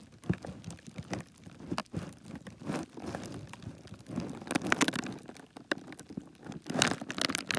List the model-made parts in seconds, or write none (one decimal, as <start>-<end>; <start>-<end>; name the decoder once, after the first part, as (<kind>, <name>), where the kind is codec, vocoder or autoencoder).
none